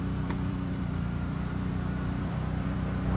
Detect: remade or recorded remade